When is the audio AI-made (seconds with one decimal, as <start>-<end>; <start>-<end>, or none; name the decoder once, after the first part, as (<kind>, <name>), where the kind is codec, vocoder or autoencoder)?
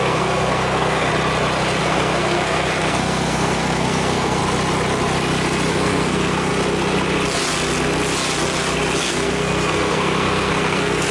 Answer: 0.0-1.1 (codec, SNAC); 1.8-4.4; 5.7-6.5; 9.0-11.1